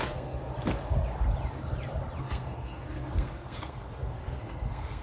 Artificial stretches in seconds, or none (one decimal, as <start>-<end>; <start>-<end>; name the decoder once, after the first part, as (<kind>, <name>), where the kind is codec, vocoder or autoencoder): 0.0-0.5 (codec, SNAC); 2.2-5.0